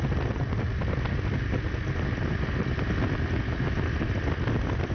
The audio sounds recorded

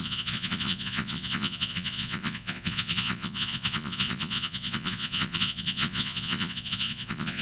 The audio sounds remade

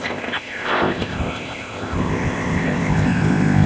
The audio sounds remade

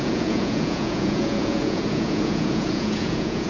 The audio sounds remade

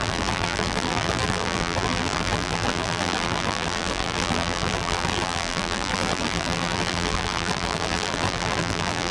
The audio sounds remade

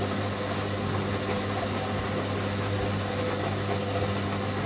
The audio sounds recorded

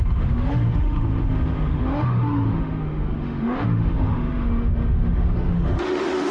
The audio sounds remade